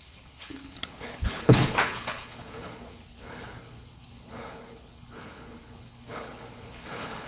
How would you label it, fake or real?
fake